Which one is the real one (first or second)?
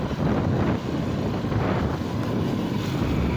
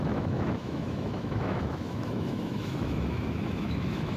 first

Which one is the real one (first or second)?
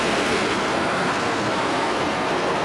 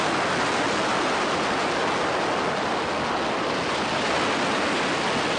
second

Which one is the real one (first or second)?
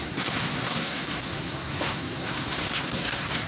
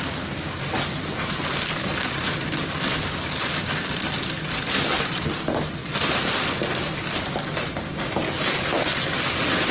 second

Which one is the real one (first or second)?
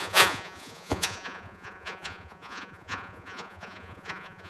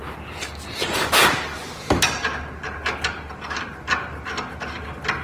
second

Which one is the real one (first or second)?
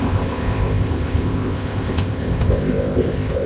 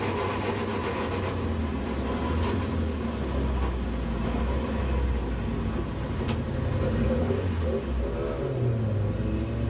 second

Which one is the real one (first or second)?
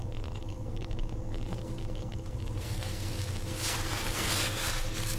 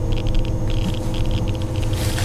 second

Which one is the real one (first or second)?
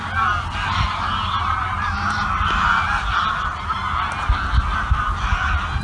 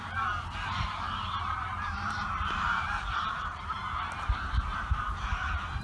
first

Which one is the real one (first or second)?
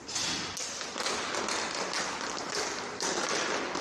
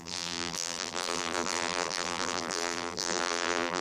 first